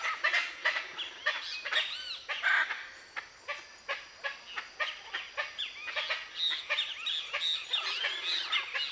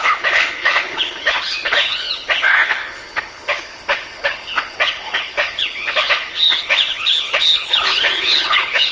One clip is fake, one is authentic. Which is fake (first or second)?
second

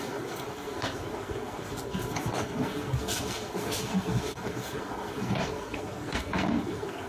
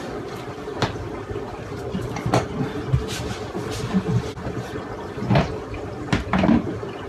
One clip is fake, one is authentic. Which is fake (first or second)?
first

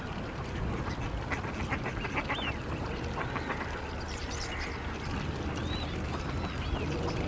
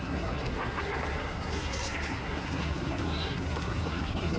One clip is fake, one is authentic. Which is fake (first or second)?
second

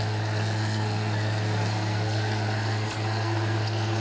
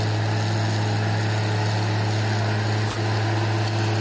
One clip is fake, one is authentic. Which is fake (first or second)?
first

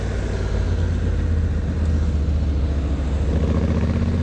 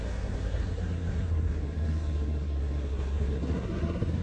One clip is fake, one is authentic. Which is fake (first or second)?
second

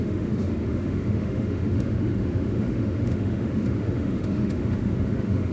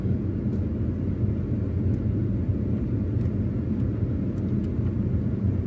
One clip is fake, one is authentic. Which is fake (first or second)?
first